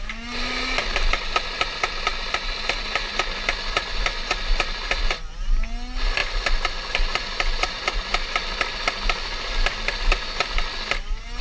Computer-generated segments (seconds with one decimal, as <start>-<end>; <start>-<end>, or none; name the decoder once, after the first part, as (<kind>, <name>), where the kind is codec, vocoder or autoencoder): none